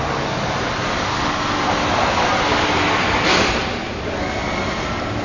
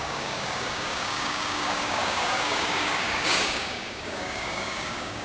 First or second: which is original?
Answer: first